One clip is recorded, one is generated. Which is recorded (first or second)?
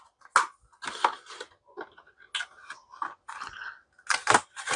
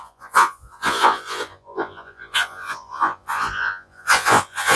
first